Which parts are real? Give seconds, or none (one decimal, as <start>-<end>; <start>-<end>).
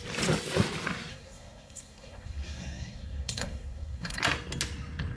0.0-1.1; 4.2-5.2